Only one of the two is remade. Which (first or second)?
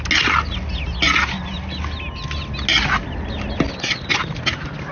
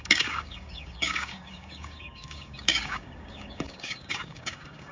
second